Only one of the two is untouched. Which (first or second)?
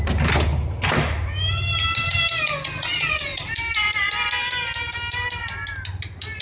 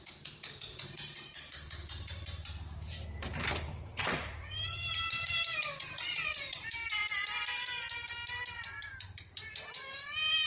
first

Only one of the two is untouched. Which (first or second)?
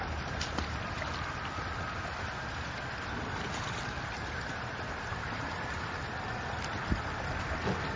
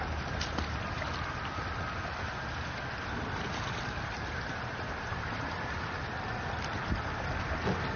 second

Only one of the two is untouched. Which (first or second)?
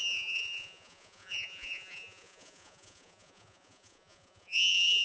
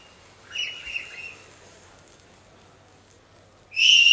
second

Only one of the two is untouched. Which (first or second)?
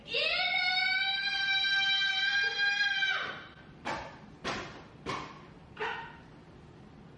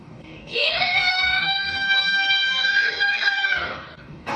first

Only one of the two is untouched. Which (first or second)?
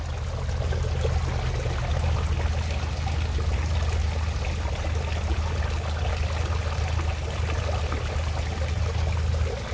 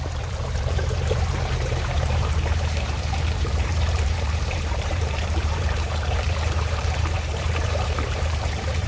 first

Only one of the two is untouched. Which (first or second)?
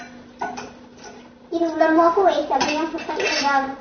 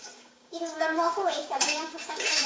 first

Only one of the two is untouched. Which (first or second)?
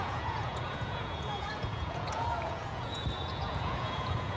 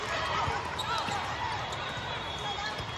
second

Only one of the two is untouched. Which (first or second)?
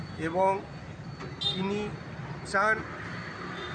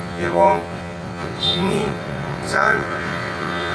first